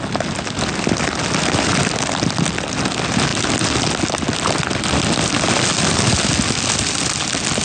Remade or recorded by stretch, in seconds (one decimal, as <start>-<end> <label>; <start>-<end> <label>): 0.0-7.6 recorded